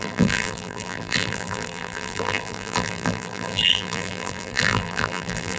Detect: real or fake fake